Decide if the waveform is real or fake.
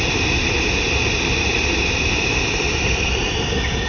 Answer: real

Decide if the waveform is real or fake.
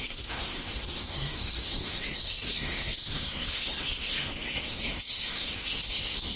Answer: fake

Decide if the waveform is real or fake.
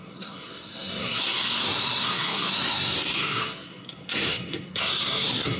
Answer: fake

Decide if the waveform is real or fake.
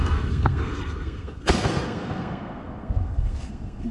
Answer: fake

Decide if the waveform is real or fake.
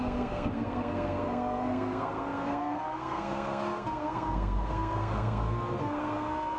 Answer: fake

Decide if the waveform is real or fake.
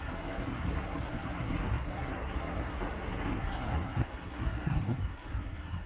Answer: fake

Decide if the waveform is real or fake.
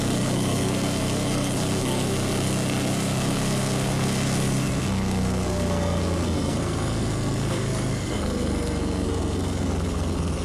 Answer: fake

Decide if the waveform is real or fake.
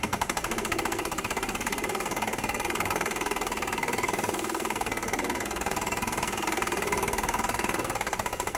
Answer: fake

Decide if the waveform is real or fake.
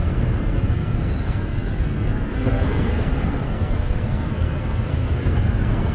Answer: fake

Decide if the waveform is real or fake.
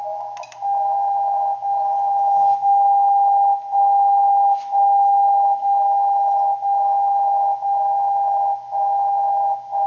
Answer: real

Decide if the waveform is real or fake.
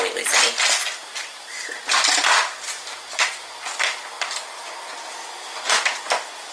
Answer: real